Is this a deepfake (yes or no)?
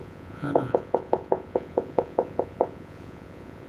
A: yes